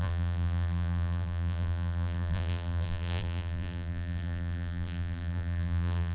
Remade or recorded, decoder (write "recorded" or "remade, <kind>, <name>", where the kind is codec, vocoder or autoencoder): remade, vocoder, BigVGAN v2